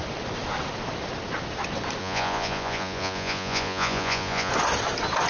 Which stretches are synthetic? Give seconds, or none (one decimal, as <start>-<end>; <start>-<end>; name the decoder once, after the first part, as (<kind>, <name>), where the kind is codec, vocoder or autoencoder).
2.0-4.5 (vocoder, Vocos)